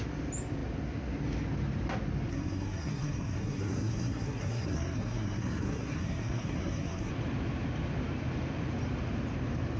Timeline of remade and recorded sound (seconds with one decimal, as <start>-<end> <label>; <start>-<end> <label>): 0.0-2.3 recorded; 2.3-7.1 remade; 7.1-9.8 recorded